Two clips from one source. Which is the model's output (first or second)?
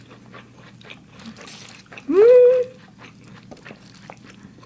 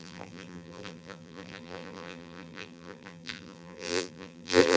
second